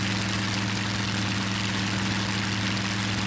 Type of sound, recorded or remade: recorded